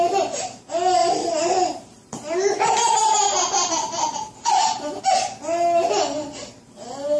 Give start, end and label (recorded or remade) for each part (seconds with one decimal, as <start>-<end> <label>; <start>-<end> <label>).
0.0-1.0 recorded; 1.0-5.0 remade; 5.0-7.2 recorded